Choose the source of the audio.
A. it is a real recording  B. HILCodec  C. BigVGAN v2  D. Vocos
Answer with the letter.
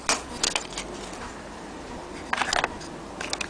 A